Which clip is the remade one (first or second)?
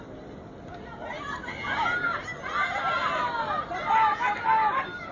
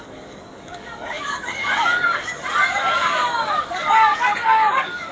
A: second